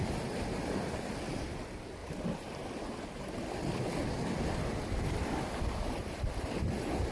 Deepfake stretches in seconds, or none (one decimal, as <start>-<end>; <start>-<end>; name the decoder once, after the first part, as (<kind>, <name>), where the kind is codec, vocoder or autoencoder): none

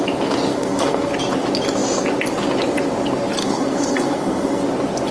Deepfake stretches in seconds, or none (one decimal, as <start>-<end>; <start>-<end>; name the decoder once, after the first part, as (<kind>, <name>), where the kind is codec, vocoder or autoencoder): 0.5-1.1 (codec, SNAC); 3.4-4.6

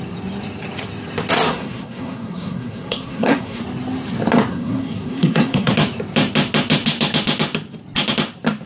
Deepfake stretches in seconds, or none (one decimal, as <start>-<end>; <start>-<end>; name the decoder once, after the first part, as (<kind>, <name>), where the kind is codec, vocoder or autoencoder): 1.5-3.6 (codec, SNAC); 4.5-5.7